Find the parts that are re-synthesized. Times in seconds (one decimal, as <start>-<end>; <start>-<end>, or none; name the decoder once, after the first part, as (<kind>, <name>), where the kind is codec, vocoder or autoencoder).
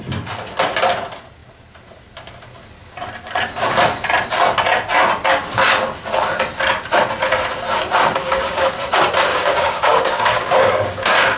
8.2-8.7 (codec, DAC); 9.3-11.4